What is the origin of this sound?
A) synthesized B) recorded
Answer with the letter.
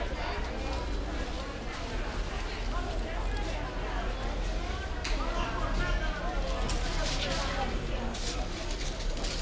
B